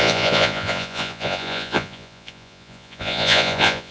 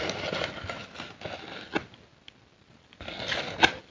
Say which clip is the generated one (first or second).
first